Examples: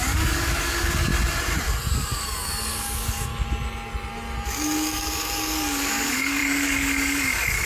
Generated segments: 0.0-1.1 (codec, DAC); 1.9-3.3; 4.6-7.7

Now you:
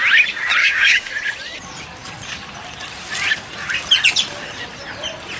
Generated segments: 0.6-1.1 (codec, DAC)

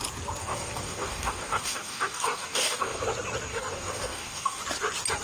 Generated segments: 0.4-3.0 (codec, DAC); 3.5-4.6

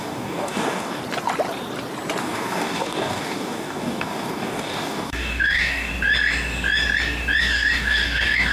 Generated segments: 0.0-1.0 (codec, DAC); 2.2-5.9; 7.4-8.5

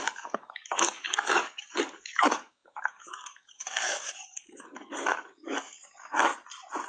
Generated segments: 0.0-6.3 (codec, DAC)

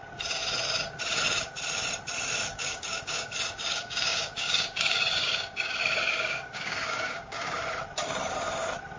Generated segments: 2.5-7.6 (codec, DAC)